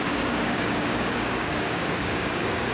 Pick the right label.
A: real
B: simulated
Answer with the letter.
B